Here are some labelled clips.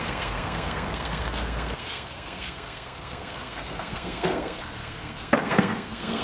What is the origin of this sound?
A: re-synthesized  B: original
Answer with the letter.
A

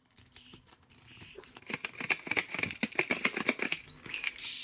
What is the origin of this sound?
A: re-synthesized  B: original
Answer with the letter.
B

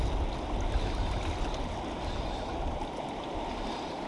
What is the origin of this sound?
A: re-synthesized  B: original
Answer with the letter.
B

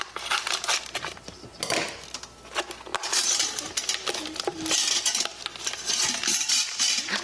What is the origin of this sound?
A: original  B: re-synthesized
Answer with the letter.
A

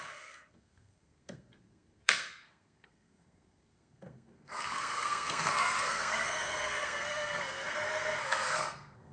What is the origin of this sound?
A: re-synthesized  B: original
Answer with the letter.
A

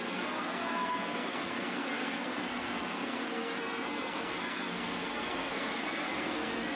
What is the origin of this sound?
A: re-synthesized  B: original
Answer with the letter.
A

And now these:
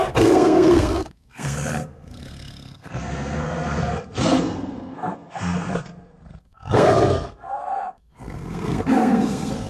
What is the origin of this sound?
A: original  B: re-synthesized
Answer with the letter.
B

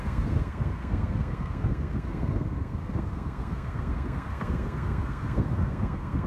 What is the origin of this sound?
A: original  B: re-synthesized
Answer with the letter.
B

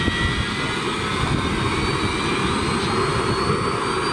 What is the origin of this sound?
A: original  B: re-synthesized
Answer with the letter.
A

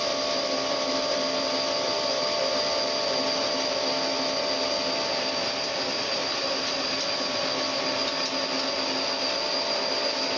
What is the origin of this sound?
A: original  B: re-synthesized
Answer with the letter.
A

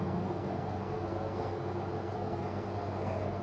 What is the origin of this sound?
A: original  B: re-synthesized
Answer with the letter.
B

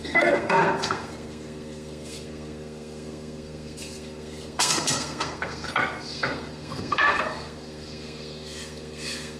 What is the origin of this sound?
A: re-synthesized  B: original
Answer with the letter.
A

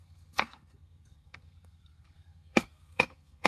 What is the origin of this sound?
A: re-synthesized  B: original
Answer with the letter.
A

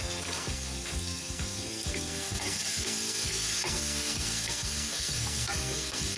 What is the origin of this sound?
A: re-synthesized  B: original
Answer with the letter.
A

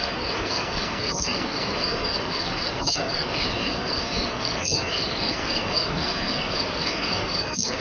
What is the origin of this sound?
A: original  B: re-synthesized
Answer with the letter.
B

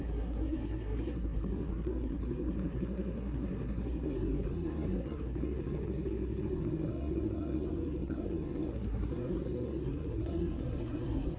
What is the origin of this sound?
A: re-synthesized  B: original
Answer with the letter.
A